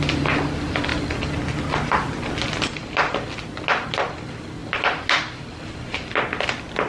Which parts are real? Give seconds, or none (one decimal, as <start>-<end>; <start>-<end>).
0.0-6.9